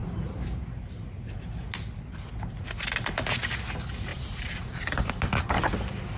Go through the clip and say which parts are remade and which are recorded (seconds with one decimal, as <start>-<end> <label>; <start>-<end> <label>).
0.0-0.6 remade; 0.6-4.1 recorded; 4.1-5.1 remade; 5.1-6.2 recorded